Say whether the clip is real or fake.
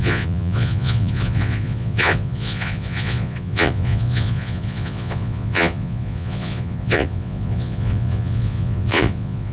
fake